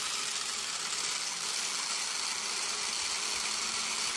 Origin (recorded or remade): recorded